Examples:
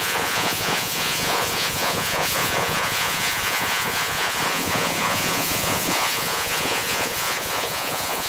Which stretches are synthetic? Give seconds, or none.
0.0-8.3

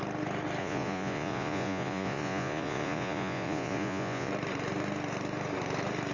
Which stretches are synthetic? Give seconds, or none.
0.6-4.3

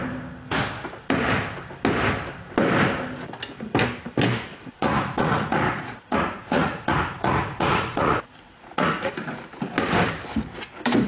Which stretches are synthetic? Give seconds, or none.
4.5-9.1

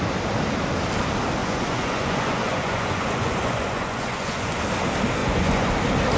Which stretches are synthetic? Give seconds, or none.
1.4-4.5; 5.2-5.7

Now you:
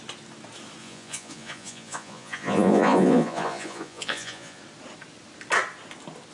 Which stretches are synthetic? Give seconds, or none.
0.8-4.6

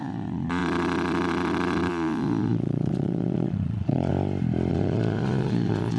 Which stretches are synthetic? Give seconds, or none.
0.0-4.1; 4.7-6.0